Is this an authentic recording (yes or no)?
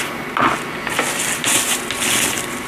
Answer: yes